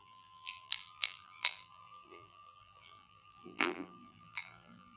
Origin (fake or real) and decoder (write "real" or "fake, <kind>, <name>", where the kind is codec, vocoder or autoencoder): fake, vocoder, BigVGAN v2